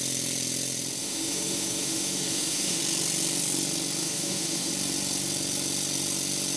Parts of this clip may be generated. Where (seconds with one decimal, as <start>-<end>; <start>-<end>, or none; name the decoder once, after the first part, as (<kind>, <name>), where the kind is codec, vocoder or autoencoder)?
1.0-2.8 (autoencoder, DAC-VAE); 4.0-4.7